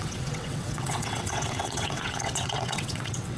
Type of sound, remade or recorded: remade